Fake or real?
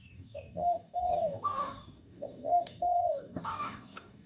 fake